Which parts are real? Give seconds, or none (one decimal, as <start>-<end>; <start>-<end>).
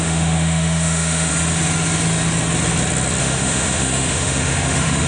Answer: 1.3-3.2